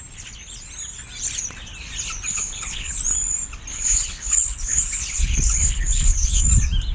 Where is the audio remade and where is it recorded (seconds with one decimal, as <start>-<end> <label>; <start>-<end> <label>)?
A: 0.0-2.3 recorded; 2.3-3.0 remade; 3.0-3.7 recorded; 3.7-6.4 remade; 6.4-6.9 recorded